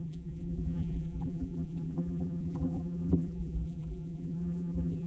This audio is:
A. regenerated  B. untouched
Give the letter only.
A